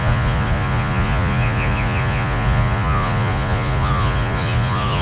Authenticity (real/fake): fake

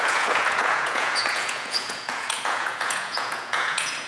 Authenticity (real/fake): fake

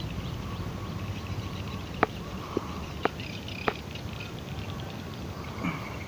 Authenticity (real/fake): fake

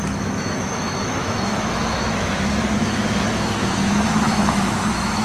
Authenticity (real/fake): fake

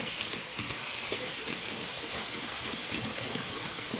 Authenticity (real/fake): fake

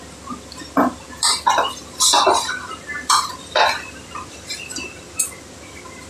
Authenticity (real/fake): real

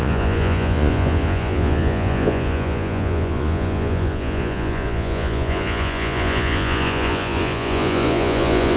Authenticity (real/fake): fake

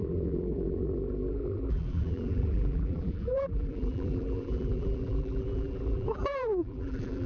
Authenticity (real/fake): fake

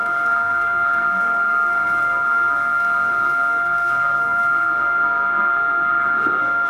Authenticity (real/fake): fake